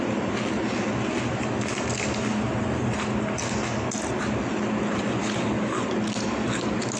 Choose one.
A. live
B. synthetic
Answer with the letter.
A